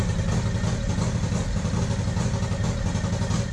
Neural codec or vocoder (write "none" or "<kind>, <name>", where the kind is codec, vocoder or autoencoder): none